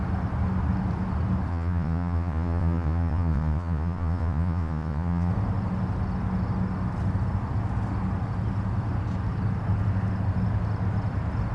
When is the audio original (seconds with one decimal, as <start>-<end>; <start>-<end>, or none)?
0.0-1.5; 5.3-11.5